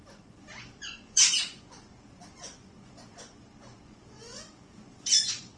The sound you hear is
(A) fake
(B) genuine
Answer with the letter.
A